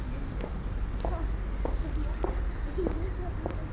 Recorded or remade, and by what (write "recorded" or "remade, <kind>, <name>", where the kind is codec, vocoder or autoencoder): recorded